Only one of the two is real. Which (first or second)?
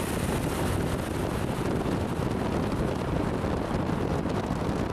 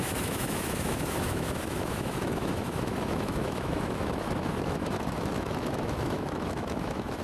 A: first